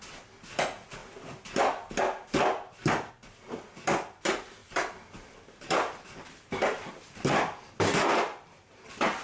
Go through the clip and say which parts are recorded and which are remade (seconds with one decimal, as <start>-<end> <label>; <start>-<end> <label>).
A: 0.0-4.6 recorded; 4.6-6.9 remade; 6.9-9.2 recorded